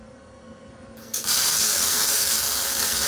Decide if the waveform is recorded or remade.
remade